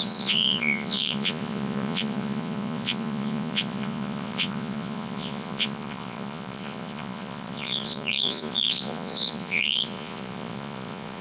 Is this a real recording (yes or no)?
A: no